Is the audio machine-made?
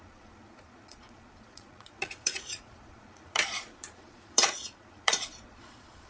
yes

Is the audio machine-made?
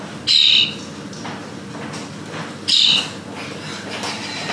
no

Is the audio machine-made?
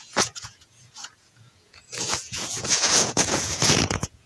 yes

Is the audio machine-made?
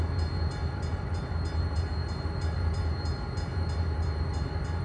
no